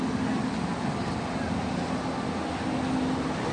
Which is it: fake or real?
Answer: real